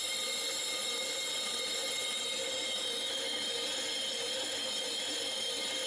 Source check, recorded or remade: recorded